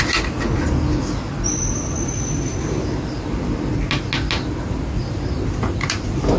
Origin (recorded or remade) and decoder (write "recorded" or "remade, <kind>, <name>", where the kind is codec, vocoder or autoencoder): recorded